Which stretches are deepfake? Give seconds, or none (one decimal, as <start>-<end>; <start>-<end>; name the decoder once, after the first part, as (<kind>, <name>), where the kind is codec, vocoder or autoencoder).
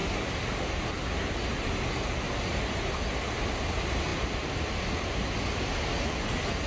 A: none